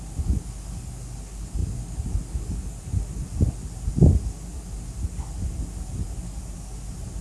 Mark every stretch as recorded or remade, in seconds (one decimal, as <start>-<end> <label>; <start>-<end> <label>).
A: 0.0-7.2 recorded